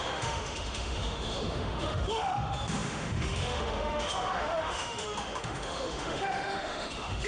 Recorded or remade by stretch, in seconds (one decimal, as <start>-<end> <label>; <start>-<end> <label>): 0.0-7.3 remade